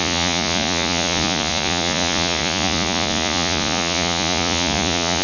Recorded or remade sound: remade